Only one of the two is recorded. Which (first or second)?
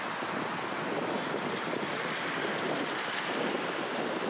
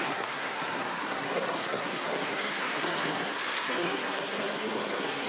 first